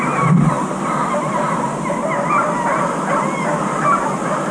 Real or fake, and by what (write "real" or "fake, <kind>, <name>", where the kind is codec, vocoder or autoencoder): real